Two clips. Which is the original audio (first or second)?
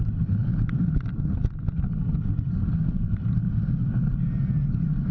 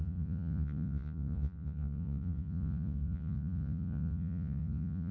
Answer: first